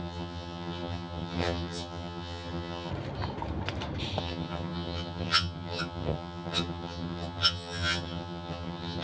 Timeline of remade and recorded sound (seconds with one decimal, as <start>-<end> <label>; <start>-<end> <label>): 0.0-2.9 remade; 2.9-4.2 recorded; 4.2-9.0 remade